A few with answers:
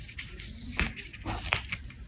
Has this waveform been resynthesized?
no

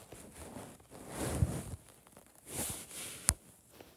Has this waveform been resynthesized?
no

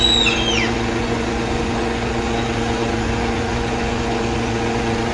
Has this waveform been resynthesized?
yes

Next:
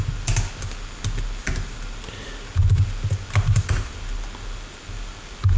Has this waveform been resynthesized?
no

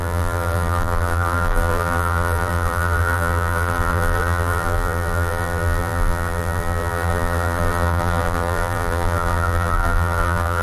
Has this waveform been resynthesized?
yes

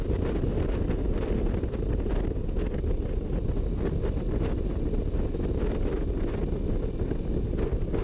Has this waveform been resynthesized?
no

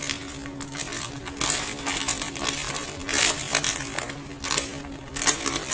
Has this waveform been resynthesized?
no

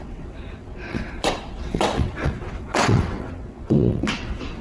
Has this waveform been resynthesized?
yes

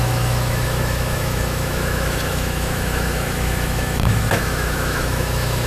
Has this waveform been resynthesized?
yes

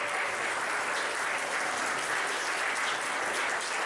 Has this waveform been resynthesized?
no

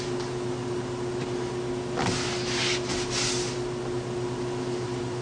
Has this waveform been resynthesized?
no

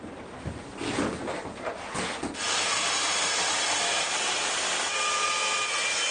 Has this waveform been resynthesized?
no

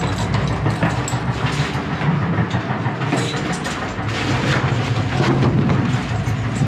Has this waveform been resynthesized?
no